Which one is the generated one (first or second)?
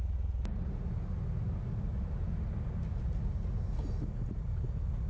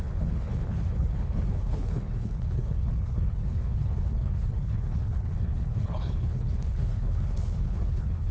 second